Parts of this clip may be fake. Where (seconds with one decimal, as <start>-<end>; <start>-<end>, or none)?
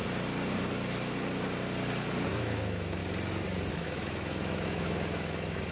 2.3-3.0; 3.7-5.7